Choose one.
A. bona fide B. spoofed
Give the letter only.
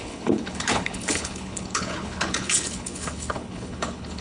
B